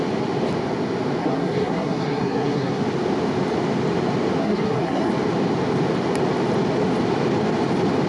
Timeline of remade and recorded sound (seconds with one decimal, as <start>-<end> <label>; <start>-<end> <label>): 0.0-1.2 recorded; 1.2-2.8 remade; 2.8-4.4 recorded; 4.4-5.1 remade; 5.1-8.1 recorded